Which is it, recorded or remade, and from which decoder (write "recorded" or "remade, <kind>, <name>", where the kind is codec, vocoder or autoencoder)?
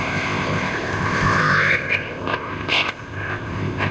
remade, codec, ZipCodec